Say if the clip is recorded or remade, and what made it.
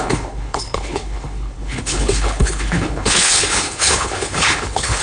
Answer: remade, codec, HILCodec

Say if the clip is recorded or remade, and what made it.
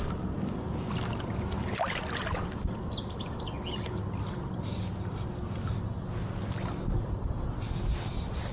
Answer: recorded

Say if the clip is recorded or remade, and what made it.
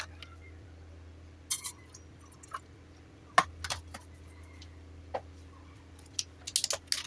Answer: recorded